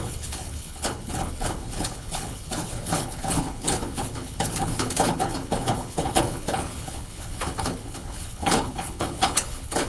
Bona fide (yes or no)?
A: no